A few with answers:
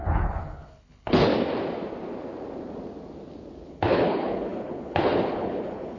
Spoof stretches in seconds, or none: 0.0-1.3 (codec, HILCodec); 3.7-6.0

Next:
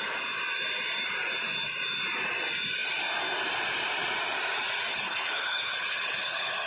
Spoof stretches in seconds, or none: 4.9-6.7 (codec, HILCodec)

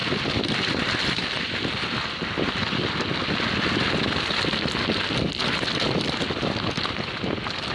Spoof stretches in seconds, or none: none